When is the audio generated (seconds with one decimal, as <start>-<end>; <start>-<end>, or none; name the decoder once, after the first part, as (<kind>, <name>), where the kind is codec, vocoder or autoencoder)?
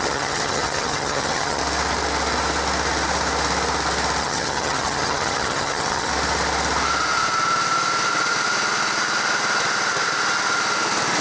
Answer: 0.0-1.6 (vocoder, HiFi-GAN); 4.2-6.1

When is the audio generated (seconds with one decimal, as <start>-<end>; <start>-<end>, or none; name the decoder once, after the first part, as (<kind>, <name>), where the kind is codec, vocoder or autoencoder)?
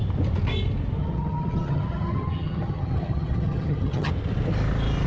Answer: 1.0-4.1 (vocoder, HiFi-GAN)